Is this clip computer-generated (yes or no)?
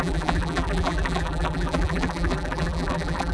yes